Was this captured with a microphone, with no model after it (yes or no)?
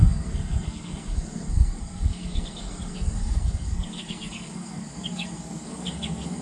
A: no